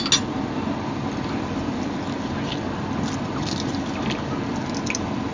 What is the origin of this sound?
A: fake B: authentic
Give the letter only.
B